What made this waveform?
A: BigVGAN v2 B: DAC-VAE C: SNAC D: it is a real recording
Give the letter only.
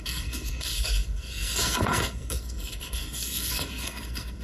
C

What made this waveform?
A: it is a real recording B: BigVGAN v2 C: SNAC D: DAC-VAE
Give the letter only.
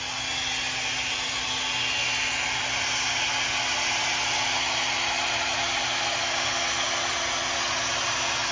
A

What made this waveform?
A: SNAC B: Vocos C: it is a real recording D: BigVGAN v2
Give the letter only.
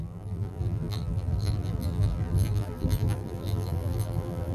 D